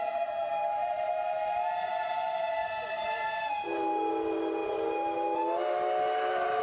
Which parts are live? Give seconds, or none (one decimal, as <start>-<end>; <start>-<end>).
0.0-6.6